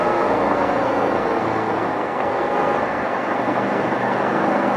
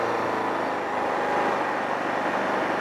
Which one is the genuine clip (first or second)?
second